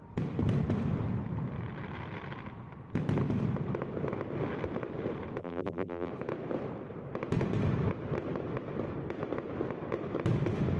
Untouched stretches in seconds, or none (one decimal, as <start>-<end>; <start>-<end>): 0.0-5.4; 6.1-10.8